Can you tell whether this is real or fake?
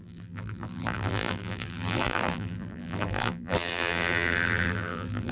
fake